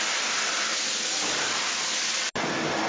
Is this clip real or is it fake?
real